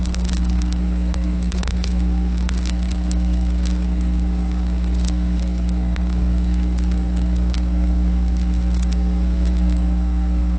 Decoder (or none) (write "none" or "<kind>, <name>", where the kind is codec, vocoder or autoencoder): codec, SNAC